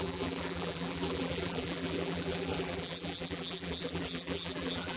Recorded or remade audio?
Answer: remade